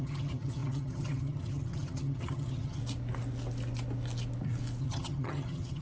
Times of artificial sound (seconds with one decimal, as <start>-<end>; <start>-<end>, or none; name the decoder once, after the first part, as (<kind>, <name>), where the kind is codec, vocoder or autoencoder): 0.0-2.8 (vocoder, HiFi-GAN); 4.8-5.8